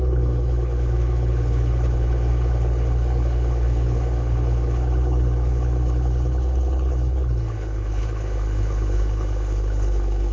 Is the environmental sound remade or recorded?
remade